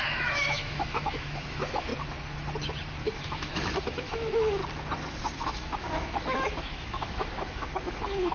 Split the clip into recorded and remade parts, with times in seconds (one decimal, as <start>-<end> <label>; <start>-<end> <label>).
0.0-1.9 remade; 1.9-3.0 recorded; 3.0-4.6 remade; 4.6-5.4 recorded; 5.4-8.3 remade